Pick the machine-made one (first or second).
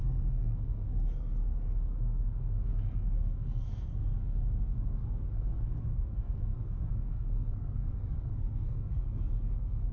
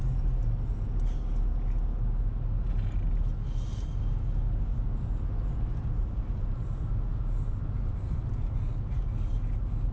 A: first